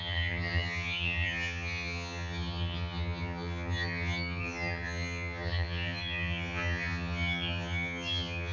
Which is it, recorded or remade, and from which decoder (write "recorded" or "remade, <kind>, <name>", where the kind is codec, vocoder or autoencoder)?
remade, vocoder, HiFi-GAN